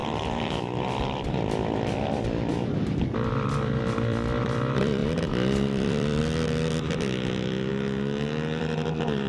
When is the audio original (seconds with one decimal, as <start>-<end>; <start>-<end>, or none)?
7.7-8.6